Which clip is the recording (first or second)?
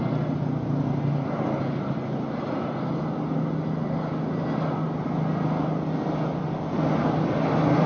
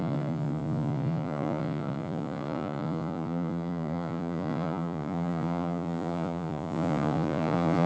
first